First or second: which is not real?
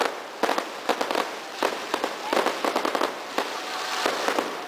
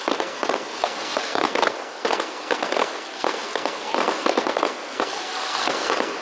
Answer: second